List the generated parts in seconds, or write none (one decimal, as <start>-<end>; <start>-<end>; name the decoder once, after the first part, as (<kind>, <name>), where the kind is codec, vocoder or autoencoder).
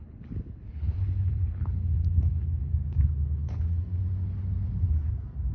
0.0-2.7 (codec, HILCodec)